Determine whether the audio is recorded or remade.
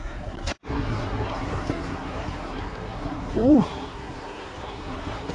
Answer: remade